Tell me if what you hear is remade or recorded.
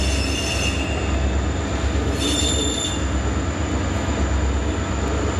recorded